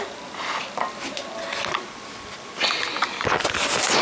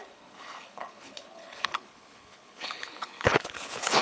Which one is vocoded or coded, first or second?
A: second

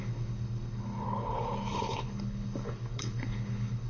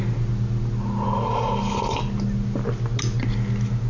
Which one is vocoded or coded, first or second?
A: first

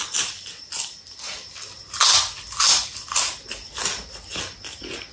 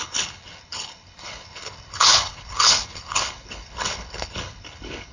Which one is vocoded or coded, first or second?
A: second